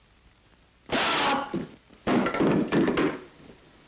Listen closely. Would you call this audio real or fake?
real